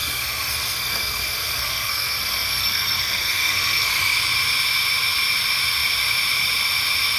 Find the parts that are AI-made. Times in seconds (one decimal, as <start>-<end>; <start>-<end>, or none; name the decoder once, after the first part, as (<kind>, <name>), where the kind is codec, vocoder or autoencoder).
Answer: 0.0-4.0 (codec, SNAC)